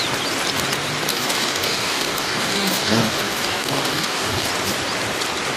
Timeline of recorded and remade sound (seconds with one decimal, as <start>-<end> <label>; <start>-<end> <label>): 0.0-1.1 recorded; 1.1-4.5 remade; 4.5-5.6 recorded

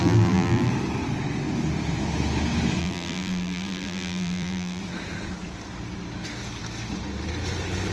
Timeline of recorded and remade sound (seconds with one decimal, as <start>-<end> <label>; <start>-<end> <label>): 0.0-0.7 remade; 0.7-2.8 recorded; 2.8-4.8 remade; 4.8-7.9 recorded

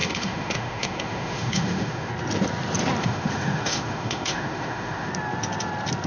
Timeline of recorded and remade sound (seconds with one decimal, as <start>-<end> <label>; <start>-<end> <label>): 0.0-2.1 remade; 2.1-3.0 recorded; 3.0-5.1 remade; 5.1-6.1 recorded

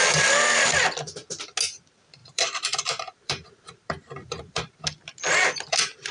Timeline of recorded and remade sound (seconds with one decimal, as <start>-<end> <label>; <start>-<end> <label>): 0.0-2.2 recorded; 2.2-4.8 remade; 4.8-6.1 recorded

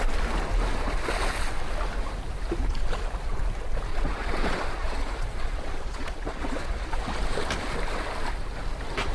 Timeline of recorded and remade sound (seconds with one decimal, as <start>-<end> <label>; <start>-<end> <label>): 0.0-3.9 recorded; 3.9-7.0 remade; 7.0-9.1 recorded

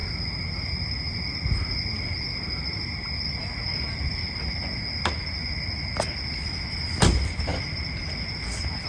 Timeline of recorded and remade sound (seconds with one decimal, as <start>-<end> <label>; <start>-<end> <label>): 0.0-8.9 recorded

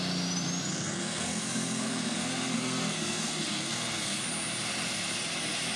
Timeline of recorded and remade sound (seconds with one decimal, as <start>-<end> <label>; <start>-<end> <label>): 0.0-0.7 recorded; 0.7-4.2 remade; 4.2-5.8 recorded

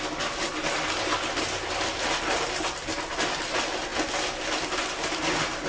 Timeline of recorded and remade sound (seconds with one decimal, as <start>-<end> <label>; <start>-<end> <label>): 0.0-5.7 recorded